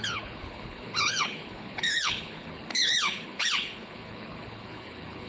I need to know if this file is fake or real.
fake